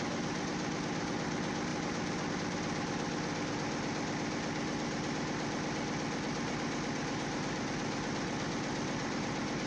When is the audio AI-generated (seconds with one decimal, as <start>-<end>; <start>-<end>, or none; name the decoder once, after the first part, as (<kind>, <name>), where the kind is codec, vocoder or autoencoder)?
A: none